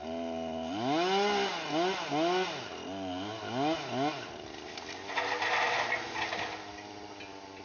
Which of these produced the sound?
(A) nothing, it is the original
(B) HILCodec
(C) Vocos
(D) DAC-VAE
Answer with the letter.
A